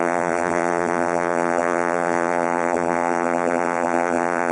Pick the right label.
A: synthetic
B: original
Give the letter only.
A